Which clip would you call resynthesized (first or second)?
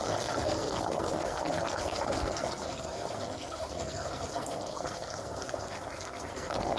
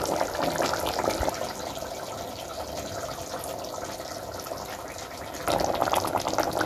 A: first